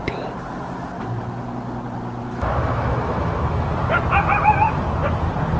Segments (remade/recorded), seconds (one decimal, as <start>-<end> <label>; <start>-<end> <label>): 0.0-2.2 recorded; 2.2-3.7 remade; 3.7-5.6 recorded